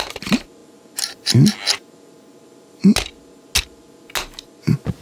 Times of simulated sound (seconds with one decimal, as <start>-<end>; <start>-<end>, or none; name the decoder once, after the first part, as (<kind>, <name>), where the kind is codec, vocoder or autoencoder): none